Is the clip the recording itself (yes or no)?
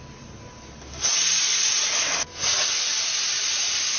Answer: yes